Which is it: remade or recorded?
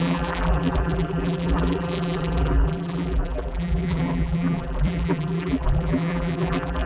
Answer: remade